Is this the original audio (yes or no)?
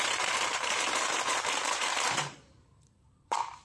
no